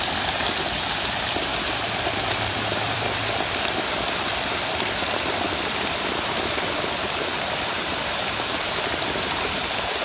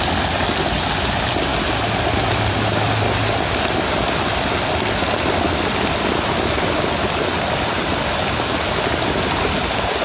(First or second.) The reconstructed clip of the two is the first